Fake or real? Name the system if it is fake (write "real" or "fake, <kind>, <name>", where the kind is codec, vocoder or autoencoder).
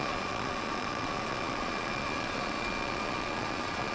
fake, vocoder, Vocos